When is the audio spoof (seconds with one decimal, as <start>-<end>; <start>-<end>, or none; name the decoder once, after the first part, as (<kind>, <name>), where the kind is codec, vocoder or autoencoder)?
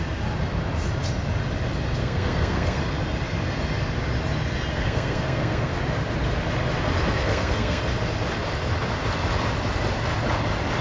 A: 2.0-2.8 (codec, SNAC); 4.7-5.7; 7.2-7.8